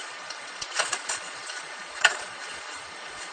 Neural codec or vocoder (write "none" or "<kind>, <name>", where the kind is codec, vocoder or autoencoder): vocoder, Vocos